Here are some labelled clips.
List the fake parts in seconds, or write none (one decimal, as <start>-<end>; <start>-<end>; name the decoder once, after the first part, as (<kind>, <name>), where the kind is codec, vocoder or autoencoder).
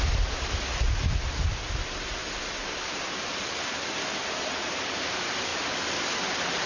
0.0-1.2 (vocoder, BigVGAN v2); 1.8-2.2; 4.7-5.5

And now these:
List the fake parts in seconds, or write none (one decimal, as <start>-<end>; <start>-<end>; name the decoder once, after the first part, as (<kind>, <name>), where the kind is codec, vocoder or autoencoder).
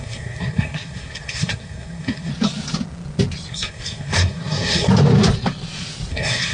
0.0-2.3 (codec, SNAC); 3.5-4.9; 6.1-6.5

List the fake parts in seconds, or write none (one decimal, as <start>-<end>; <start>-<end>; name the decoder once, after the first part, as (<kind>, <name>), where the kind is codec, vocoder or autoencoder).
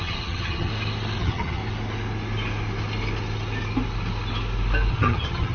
0.0-0.7 (vocoder, HiFi-GAN); 1.2-1.6; 4.9-5.5